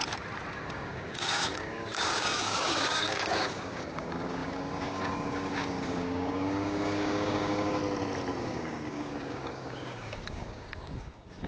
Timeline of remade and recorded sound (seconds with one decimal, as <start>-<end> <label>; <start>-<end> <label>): 0.0-0.7 recorded; 0.7-7.8 remade; 7.8-8.4 recorded; 8.4-11.5 remade